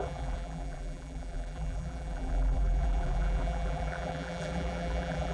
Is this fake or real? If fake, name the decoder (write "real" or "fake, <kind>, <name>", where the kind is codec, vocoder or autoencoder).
fake, vocoder, BigVGAN v2